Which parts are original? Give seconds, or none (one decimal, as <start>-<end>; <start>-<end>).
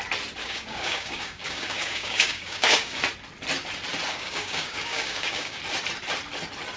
0.0-0.4; 3.0-4.1; 5.6-6.8